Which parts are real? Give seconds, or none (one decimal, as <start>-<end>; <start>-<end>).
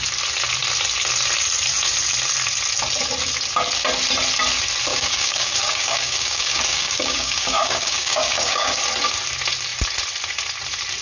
0.0-4.9; 8.8-11.0